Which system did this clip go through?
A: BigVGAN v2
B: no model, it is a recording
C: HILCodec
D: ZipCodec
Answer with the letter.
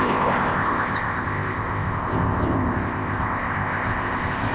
D